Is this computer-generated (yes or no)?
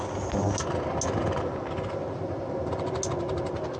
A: no